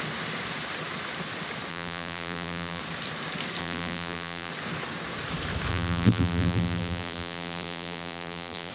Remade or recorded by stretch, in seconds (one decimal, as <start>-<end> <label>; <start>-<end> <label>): 0.0-1.7 recorded; 1.7-2.8 remade; 2.8-3.6 recorded; 3.6-4.5 remade; 4.5-5.7 recorded; 5.7-8.7 remade

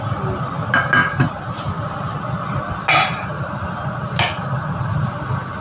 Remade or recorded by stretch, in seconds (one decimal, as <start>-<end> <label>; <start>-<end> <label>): 0.0-5.6 recorded

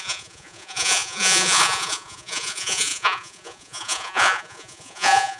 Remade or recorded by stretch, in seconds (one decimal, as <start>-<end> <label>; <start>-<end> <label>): 0.0-5.4 remade

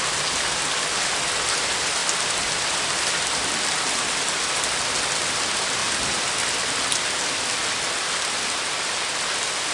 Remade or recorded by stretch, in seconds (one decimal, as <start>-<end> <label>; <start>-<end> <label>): 0.0-9.7 recorded